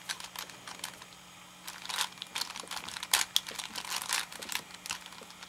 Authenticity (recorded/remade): recorded